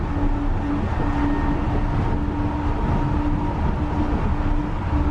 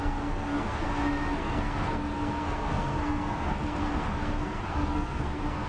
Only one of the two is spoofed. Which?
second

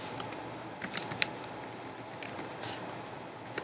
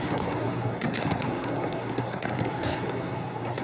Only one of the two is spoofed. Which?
second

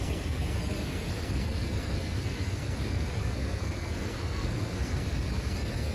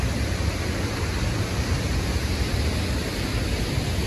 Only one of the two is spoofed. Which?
first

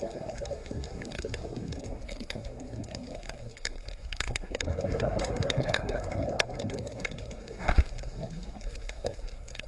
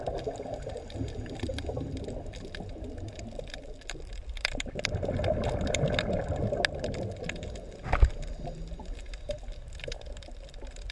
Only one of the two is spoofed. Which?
first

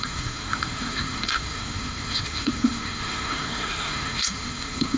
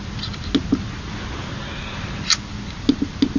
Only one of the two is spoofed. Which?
first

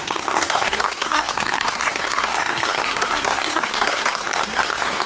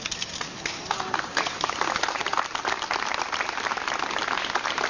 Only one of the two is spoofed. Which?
first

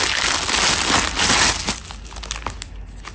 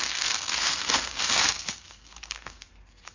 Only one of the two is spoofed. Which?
second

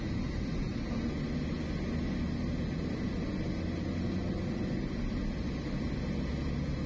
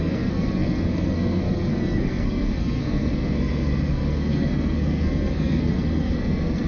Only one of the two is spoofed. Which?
second